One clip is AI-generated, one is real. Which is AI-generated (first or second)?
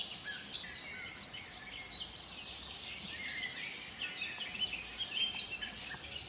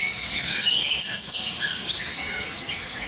second